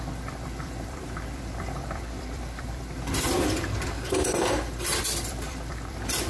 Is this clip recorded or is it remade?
remade